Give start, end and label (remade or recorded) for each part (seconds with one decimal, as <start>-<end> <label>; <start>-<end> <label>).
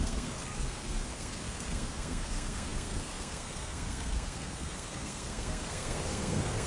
0.0-6.7 remade